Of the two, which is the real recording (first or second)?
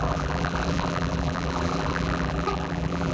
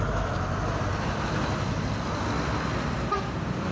second